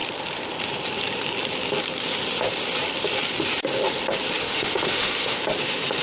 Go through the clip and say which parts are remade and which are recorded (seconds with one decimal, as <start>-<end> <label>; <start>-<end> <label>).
0.0-4.4 recorded; 4.4-5.4 remade; 5.4-6.0 recorded